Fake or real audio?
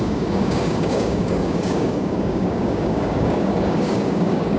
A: fake